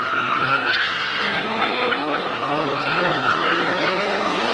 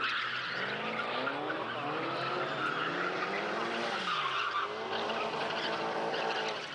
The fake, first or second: first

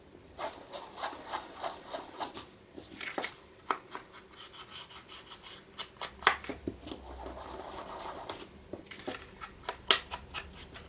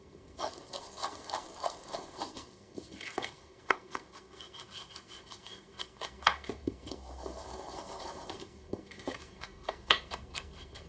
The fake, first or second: second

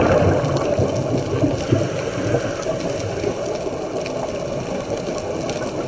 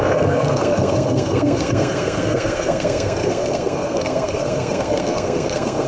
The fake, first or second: second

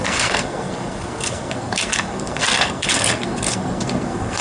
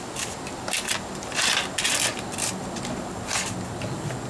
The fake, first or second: first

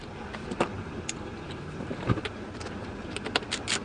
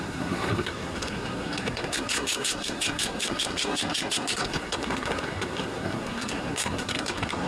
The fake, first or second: second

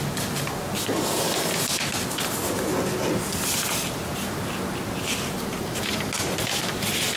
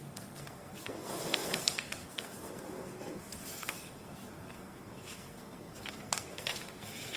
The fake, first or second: second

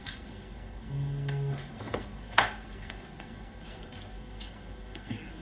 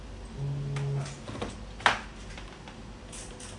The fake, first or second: first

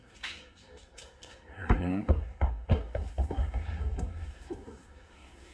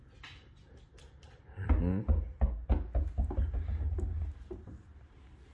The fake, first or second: first